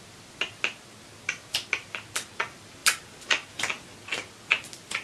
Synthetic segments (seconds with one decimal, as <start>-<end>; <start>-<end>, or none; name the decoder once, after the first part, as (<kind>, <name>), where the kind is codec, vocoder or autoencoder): none